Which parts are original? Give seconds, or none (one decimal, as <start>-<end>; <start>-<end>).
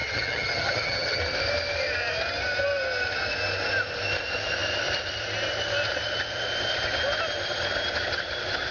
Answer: 1.2-8.7